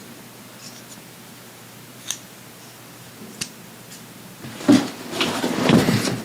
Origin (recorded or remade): remade